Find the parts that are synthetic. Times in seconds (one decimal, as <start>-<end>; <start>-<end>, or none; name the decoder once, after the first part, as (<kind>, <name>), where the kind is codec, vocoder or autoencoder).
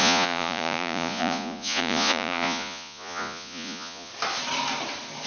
0.0-4.1 (vocoder, Vocos)